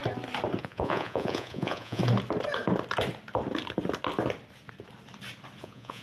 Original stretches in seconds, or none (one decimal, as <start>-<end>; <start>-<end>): 0.0-0.6; 2.0-5.6